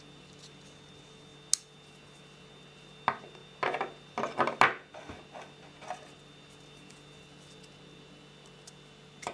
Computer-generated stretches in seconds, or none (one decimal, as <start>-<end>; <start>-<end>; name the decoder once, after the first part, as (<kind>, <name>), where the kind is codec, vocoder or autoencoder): none